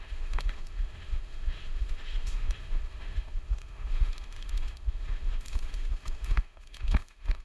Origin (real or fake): fake